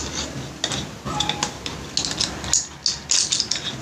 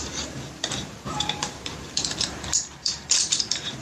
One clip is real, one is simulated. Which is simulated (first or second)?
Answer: second